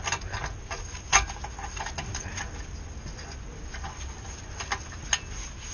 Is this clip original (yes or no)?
yes